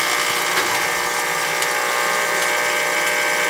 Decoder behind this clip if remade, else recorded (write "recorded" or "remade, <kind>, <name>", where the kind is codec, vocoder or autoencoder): recorded